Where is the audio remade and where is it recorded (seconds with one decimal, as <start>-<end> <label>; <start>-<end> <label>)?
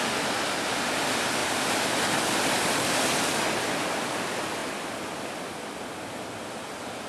0.0-7.1 recorded